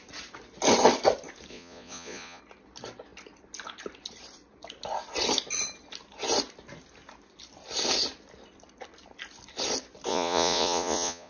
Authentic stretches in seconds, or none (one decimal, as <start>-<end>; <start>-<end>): 0.0-1.5; 2.4-10.1